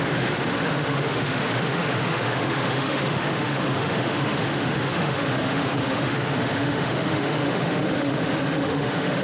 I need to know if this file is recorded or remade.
remade